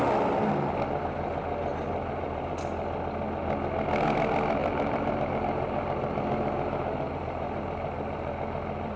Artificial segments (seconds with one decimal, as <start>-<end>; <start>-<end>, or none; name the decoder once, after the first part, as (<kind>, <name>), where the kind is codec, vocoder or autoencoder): 1.7-2.5 (vocoder, BigVGAN v2); 4.6-9.0